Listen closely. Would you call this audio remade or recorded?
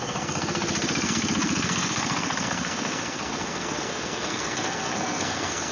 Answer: remade